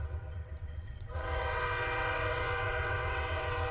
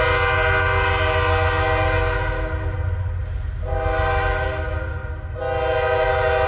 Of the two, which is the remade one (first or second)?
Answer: first